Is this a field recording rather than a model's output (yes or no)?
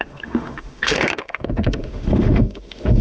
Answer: no